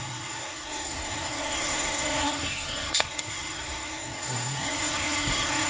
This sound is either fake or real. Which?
fake